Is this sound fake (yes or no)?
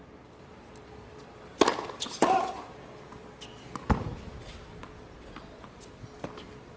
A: no